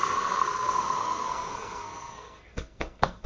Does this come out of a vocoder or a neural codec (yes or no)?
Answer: yes